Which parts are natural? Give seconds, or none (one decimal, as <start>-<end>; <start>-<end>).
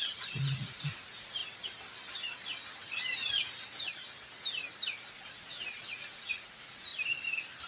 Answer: 1.4-5.1; 6.9-7.7